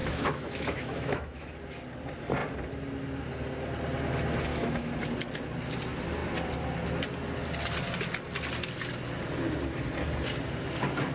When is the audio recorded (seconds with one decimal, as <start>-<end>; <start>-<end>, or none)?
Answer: 1.5-4.5; 5.0-11.1